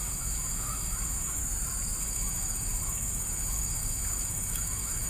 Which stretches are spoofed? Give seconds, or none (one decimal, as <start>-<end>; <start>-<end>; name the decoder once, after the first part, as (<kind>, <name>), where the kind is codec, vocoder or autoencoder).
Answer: 0.0-1.4 (autoencoder, DAC-VAE); 2.0-5.1